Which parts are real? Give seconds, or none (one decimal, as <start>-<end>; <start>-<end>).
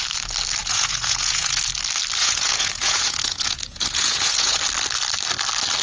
0.0-0.6; 1.6-2.2; 4.6-5.8